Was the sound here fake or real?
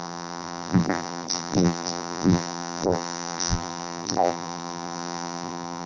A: fake